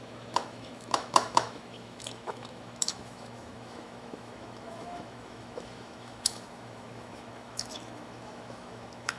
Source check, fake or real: fake